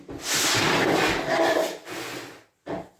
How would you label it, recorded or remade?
recorded